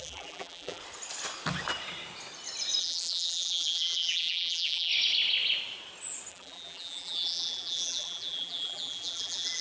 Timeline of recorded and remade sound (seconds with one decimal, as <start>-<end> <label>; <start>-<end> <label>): 0.0-0.8 remade; 0.8-2.8 recorded; 2.8-4.9 remade; 4.9-6.3 recorded; 6.3-9.6 remade